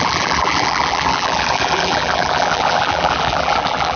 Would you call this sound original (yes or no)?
no